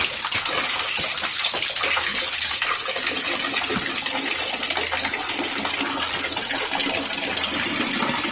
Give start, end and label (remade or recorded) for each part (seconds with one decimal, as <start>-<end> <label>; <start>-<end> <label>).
0.0-2.1 recorded; 2.1-4.3 remade; 4.3-8.3 recorded